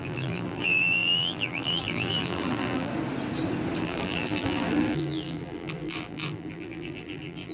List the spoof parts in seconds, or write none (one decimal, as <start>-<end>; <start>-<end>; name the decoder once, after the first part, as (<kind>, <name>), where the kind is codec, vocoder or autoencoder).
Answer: 0.0-2.9 (vocoder, BigVGAN v2); 3.8-7.5